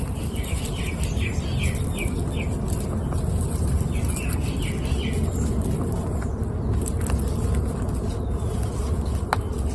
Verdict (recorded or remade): recorded